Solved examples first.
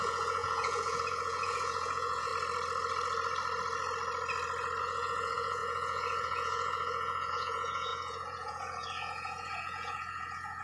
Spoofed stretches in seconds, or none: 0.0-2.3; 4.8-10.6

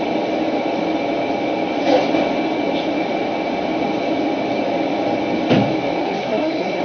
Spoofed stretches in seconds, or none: 6.0-6.8

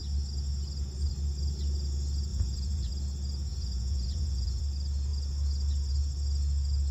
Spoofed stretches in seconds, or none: 2.3-2.9; 3.5-4.6

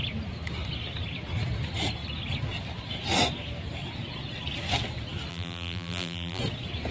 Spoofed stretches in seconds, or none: 5.3-6.4

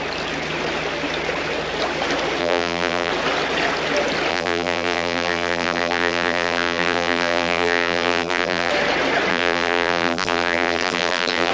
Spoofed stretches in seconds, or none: 2.4-3.1; 4.3-8.7; 9.3-11.5

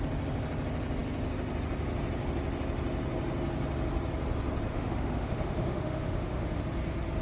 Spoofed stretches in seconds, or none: 4.7-6.6

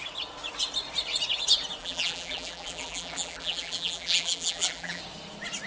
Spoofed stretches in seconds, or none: 1.8-5.0

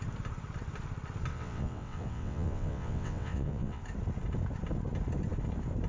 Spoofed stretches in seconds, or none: 1.3-3.8